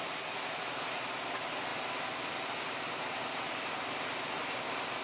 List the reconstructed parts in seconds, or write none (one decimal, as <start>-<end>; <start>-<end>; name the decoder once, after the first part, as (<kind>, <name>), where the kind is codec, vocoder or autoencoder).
none